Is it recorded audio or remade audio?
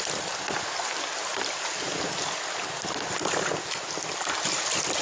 recorded